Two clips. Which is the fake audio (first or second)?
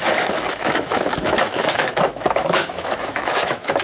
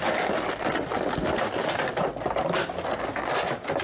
first